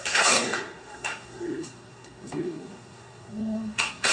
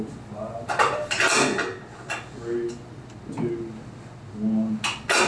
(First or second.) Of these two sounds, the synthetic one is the first